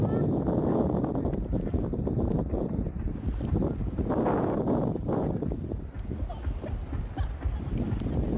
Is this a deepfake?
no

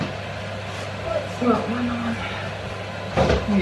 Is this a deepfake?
no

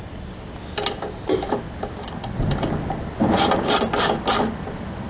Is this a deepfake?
no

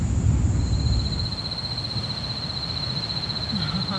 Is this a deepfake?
no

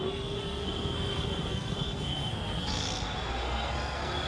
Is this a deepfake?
yes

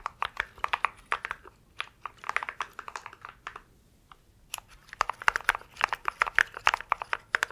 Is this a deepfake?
no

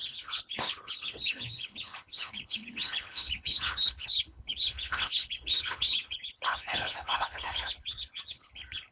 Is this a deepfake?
yes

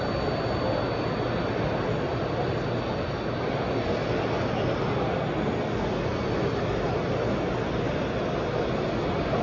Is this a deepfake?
no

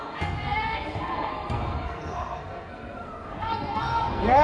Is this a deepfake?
yes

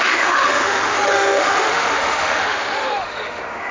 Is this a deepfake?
yes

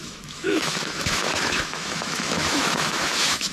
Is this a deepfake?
yes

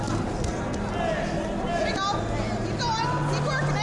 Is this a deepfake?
no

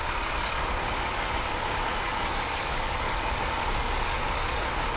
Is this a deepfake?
yes